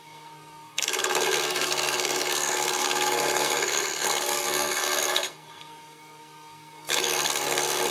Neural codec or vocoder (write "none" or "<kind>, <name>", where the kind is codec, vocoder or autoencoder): codec, SNAC